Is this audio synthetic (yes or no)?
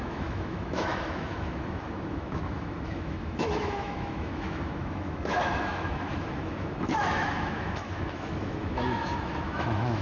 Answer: yes